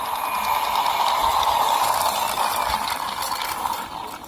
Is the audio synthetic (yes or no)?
no